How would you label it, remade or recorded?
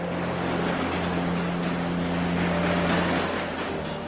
recorded